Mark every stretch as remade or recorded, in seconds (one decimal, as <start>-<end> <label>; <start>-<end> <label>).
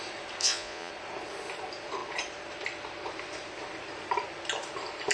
0.0-0.4 recorded; 0.4-0.9 remade; 0.9-5.1 recorded